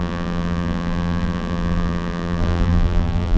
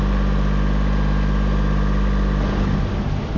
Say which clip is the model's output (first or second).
first